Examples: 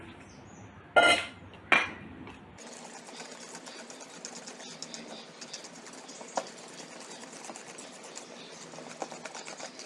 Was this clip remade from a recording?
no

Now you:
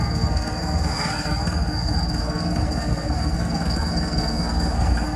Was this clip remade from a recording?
yes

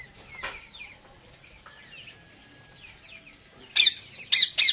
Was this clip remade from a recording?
no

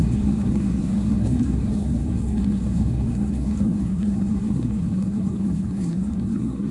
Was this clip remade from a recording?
yes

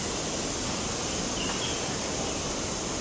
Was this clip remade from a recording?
no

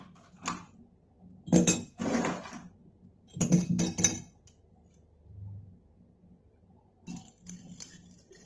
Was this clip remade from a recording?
no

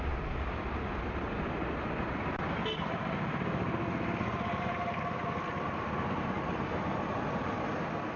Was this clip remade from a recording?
no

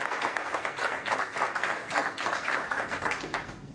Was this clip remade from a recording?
yes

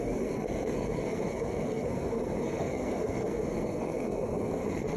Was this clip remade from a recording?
yes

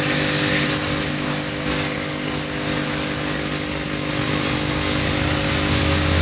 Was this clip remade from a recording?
no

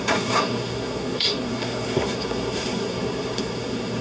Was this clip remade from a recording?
yes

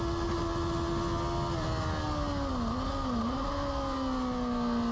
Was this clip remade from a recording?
no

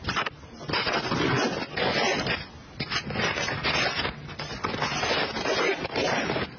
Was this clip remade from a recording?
no